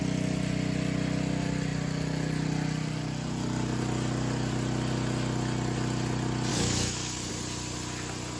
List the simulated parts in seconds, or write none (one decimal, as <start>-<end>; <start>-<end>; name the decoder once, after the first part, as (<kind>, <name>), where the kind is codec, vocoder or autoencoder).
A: 6.5-7.3 (codec, DAC)